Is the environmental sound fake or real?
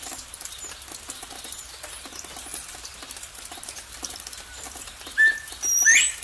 real